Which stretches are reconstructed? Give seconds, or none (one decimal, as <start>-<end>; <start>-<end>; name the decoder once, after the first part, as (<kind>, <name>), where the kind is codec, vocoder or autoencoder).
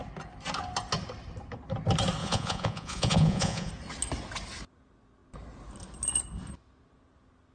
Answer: 2.2-3.7 (vocoder, Vocos)